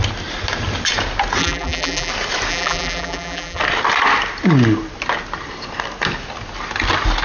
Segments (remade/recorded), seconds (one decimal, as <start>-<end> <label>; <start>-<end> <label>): 0.0-1.4 recorded; 1.4-2.1 remade; 2.1-2.5 recorded; 2.5-3.6 remade; 3.6-7.2 recorded